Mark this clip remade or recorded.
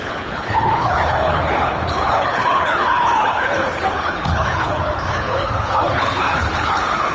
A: remade